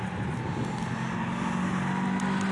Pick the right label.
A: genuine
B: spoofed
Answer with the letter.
A